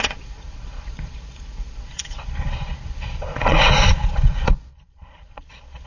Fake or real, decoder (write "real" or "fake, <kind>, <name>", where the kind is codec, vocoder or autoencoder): fake, vocoder, Vocos